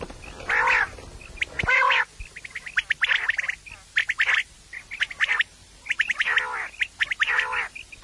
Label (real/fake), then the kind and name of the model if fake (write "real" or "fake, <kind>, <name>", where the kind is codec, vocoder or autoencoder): real